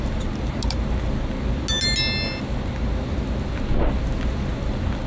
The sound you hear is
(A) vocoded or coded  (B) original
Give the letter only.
B